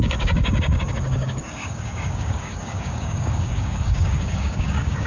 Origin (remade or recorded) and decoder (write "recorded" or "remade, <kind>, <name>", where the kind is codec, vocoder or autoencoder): remade, codec, DAC